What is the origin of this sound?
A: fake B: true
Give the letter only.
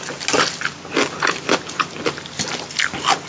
B